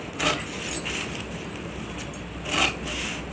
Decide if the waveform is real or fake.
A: real